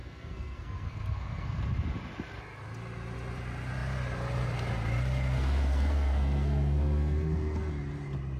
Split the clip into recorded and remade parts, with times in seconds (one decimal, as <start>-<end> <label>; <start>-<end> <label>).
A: 0.0-1.6 remade; 1.6-5.3 recorded; 5.3-7.7 remade; 7.7-8.4 recorded